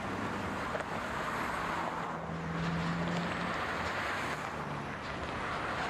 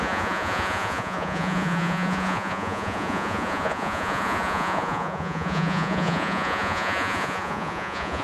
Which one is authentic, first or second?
first